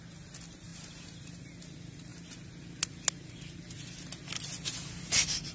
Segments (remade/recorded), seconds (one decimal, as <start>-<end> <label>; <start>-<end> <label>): 0.0-5.5 recorded